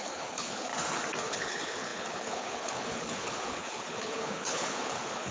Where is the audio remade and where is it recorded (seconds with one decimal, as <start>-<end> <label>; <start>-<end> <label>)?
0.0-0.7 remade; 0.7-1.3 recorded; 1.3-5.3 remade